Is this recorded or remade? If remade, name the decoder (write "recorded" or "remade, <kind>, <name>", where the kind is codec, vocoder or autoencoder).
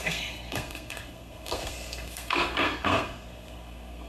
remade, codec, SNAC